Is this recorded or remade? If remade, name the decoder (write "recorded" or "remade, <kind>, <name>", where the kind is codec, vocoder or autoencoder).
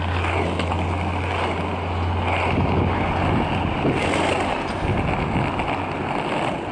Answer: recorded